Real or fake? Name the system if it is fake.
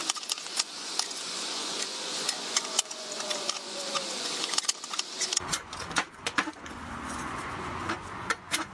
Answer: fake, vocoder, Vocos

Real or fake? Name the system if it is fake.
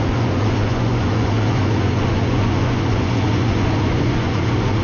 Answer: fake, vocoder, Vocos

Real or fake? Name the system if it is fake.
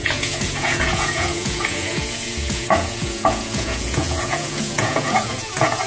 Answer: fake, vocoder, Vocos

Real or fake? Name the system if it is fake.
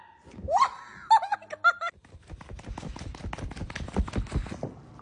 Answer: real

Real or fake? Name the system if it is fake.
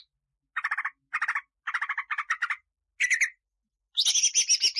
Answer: real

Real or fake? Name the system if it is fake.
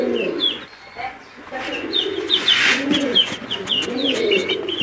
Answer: fake, vocoder, Vocos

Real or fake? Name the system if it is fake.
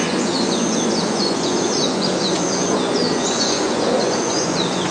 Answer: fake, vocoder, Vocos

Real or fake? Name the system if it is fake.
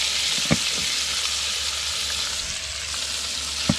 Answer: real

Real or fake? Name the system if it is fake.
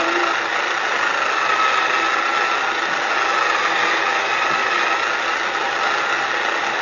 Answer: real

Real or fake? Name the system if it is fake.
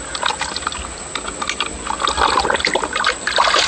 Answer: real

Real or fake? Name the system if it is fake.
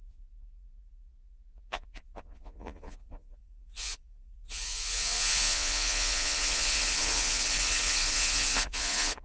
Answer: fake, vocoder, Vocos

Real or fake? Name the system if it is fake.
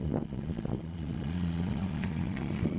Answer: fake, vocoder, Vocos